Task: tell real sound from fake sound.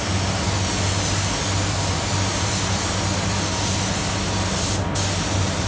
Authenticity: real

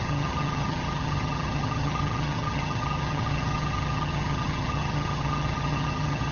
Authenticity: fake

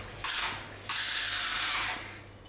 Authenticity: real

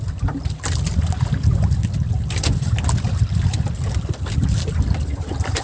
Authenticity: real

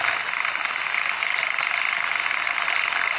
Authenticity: real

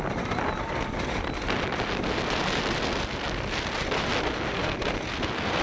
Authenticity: real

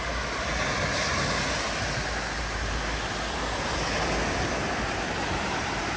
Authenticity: real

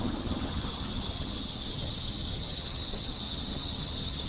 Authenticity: fake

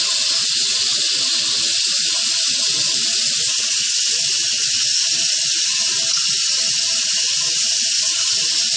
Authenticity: real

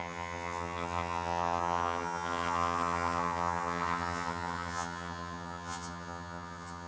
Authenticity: fake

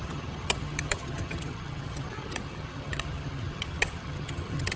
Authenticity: fake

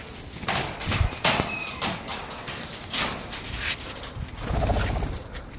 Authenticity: real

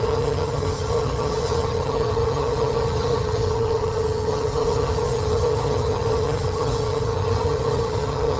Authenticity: fake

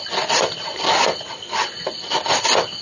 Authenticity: real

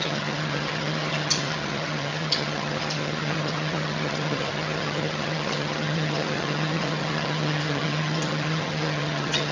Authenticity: fake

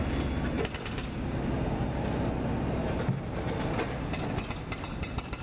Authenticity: real